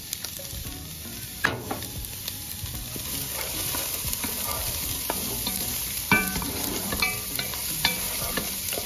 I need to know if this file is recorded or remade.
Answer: remade